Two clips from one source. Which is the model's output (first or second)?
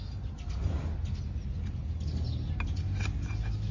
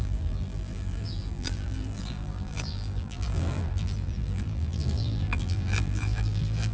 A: second